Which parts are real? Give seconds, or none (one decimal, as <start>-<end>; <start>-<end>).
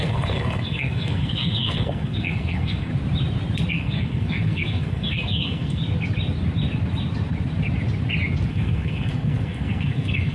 2.9-3.7; 5.8-8.5